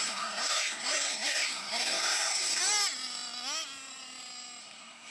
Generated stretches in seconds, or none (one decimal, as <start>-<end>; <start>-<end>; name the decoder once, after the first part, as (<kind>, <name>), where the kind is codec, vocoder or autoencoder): 0.0-2.6 (codec, SNAC); 4.6-5.1